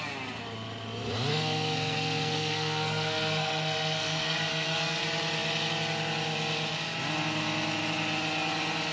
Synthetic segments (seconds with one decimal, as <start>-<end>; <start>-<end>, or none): 1.3-5.0